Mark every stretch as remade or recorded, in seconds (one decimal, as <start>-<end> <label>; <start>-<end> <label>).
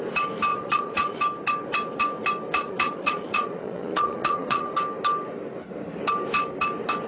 0.0-0.5 recorded; 0.5-1.2 remade; 1.2-2.5 recorded; 2.5-4.7 remade; 4.7-7.1 recorded